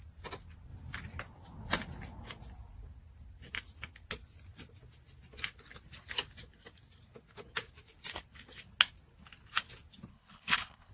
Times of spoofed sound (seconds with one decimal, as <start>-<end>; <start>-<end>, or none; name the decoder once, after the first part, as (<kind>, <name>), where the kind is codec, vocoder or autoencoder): 10.1-10.9 (codec, HILCodec)